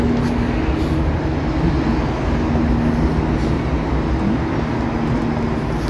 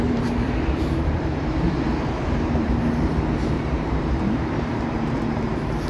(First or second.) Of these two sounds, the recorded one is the first